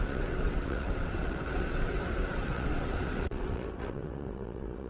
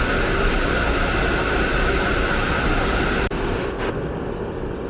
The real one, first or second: second